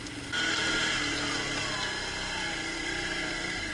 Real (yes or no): yes